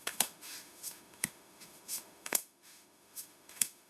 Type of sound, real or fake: fake